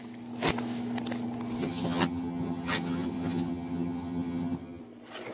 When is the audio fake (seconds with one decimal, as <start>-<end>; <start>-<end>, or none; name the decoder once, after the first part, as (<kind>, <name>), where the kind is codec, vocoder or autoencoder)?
1.6-4.8 (vocoder, HiFi-GAN)